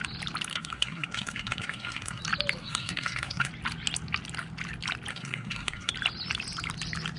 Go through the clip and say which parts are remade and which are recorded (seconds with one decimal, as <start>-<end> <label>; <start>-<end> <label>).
0.0-0.5 recorded; 0.5-2.2 remade; 2.2-2.6 recorded; 2.6-3.5 remade; 3.5-5.1 recorded; 5.1-5.9 remade; 5.9-7.2 recorded